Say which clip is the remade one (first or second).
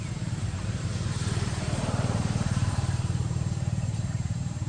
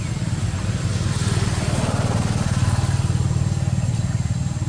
first